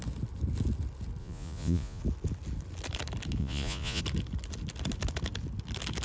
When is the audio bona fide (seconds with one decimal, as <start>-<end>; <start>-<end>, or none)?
0.0-1.2; 2.0-3.4; 4.0-6.0